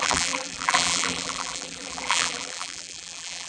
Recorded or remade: remade